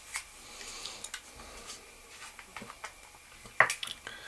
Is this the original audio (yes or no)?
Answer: yes